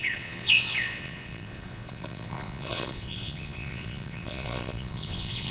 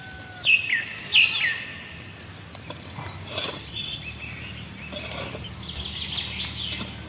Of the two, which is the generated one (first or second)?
first